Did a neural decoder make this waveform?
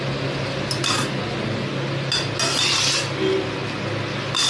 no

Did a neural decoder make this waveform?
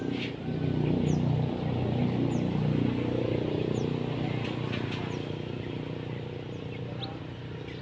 no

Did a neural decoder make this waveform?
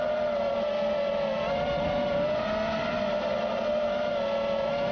no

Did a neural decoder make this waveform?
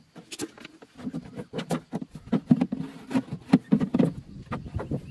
no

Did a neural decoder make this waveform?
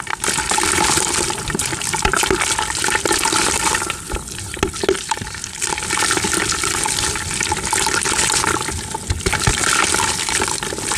no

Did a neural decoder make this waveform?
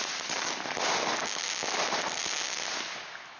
no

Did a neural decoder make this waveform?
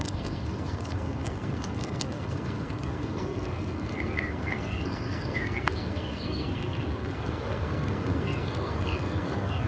yes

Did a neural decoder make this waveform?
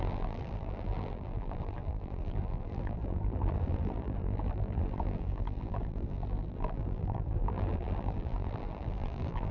yes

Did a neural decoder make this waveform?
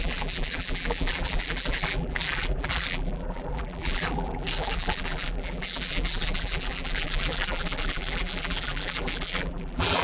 yes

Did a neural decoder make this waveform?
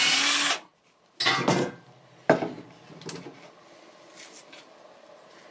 no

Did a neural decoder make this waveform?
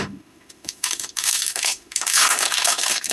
yes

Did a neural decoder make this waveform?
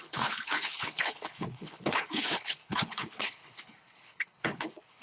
yes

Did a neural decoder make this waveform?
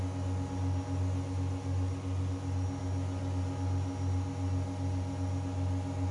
no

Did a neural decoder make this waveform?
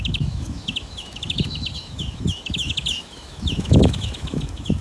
yes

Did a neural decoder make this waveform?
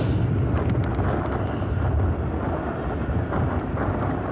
no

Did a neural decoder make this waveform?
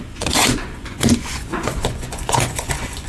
yes